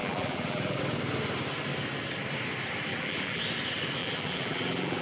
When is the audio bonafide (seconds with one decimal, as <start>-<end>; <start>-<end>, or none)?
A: 0.8-2.9; 3.4-4.0